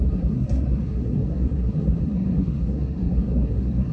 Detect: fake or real fake